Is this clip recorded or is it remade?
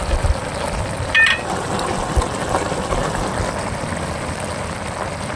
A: recorded